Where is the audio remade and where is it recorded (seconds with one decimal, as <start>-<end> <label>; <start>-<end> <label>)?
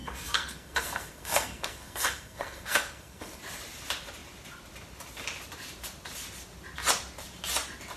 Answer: 0.0-3.4 remade; 3.4-8.0 recorded